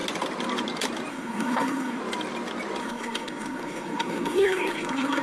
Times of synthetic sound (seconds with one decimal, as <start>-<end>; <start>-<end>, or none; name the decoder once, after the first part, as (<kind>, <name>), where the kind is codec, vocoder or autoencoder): 1.1-2.0 (codec, SNAC); 2.8-5.2